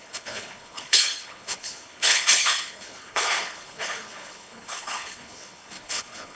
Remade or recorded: remade